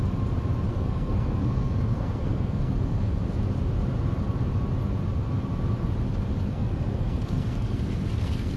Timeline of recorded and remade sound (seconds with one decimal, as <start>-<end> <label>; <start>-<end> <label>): 0.0-0.7 recorded; 0.7-3.2 remade; 3.2-6.5 recorded; 6.5-8.6 remade